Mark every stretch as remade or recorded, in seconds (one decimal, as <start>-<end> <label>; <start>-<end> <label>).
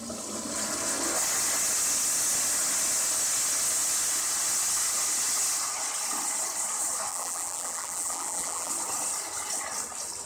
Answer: 0.0-7.1 recorded; 7.1-8.7 remade; 8.7-10.3 recorded